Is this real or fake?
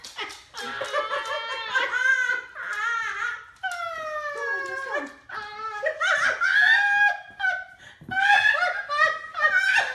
real